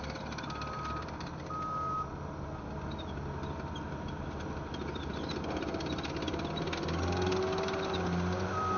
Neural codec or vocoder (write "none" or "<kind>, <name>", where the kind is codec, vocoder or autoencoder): none